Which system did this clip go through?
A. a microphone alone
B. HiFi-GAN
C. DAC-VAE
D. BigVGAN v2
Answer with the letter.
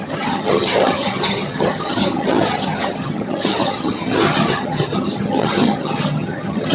B